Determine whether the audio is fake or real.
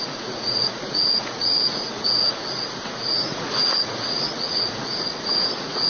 fake